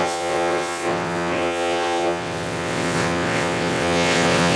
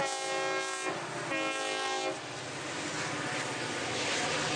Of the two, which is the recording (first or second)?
second